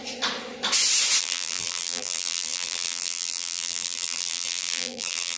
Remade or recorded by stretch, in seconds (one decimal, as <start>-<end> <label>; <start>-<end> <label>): 0.0-1.2 recorded; 1.2-5.4 remade